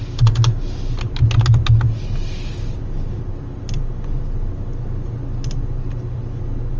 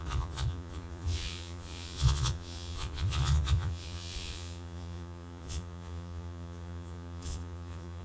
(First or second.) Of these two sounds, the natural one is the first